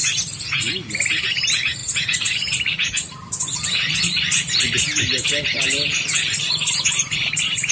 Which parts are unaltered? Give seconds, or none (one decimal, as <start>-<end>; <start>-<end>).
0.7-1.8; 6.4-7.7